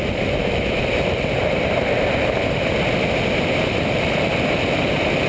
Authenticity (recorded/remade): recorded